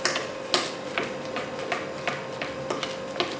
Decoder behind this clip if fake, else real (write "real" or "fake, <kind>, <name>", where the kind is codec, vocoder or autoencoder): real